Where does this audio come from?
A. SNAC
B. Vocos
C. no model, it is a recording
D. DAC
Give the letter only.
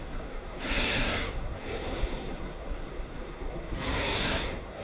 A